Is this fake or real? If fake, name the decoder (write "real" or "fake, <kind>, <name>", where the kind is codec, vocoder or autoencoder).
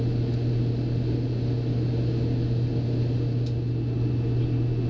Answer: real